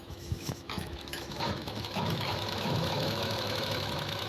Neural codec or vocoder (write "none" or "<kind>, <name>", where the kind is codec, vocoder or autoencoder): autoencoder, DAC-VAE